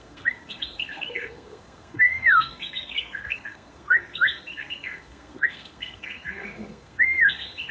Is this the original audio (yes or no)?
no